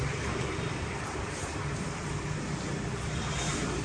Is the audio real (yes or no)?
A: no